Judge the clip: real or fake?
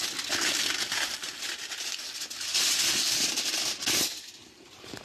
real